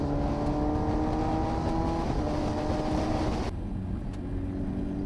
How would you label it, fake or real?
real